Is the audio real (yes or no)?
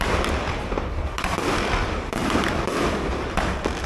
no